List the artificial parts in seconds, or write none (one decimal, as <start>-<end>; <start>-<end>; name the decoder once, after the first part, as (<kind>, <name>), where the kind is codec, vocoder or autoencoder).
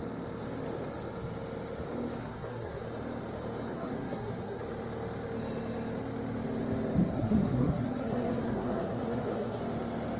2.2-2.8 (codec, SNAC); 3.7-4.6; 7.1-9.6